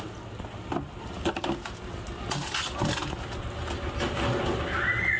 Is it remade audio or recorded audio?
recorded